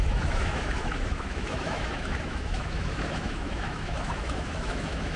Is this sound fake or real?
fake